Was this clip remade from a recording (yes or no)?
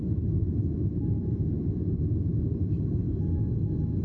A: no